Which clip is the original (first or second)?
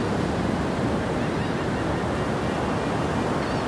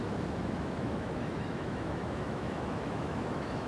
first